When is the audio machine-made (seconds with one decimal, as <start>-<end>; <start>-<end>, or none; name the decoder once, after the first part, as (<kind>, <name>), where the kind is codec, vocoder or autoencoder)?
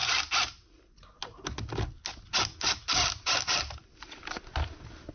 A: none